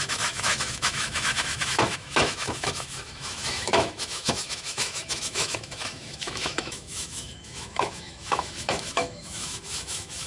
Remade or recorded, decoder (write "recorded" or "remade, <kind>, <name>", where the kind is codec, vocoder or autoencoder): remade, autoencoder, DAC-VAE